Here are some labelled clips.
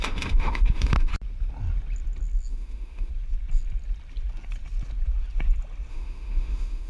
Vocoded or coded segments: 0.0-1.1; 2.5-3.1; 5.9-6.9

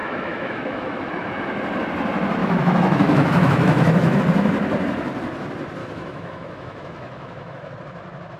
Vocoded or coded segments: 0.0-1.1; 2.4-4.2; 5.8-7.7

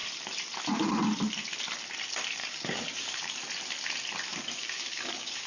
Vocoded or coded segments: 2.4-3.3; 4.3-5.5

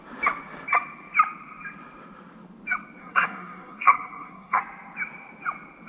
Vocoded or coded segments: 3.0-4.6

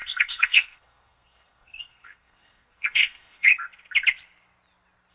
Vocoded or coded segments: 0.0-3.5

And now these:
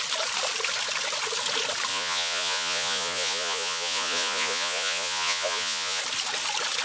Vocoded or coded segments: 1.9-6.0